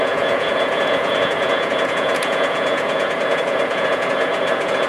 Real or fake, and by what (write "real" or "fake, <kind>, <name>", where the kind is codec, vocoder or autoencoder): fake, vocoder, Vocos